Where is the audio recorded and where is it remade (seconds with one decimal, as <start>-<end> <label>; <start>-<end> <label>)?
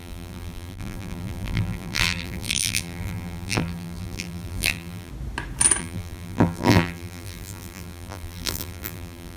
0.0-5.1 remade; 5.1-5.8 recorded; 5.8-9.4 remade